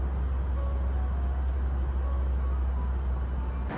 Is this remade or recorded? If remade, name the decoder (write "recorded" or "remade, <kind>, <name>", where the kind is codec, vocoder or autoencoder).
recorded